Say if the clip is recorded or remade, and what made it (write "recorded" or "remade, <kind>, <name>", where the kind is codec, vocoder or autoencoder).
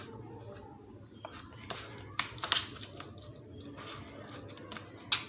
recorded